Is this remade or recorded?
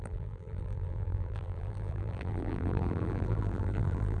remade